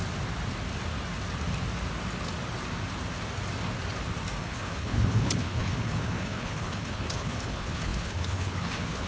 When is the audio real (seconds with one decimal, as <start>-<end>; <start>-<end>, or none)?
0.0-4.4